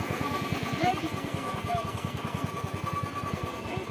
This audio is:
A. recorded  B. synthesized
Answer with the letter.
B